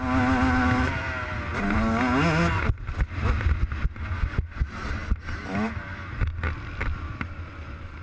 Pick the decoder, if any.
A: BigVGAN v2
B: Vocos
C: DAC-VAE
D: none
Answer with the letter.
D